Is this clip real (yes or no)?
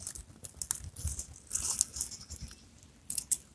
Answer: yes